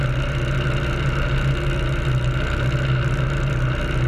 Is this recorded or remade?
recorded